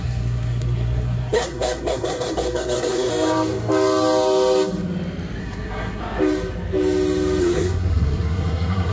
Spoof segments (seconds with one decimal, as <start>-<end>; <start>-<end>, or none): 0.0-3.1; 5.4-6.0; 7.4-8.9